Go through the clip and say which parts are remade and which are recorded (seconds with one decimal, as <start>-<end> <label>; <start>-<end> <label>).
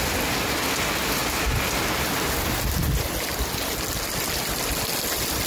0.0-5.5 recorded